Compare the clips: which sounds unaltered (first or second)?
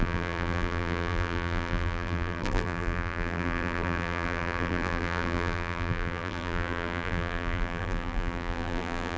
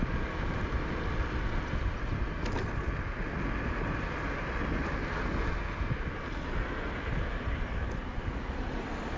second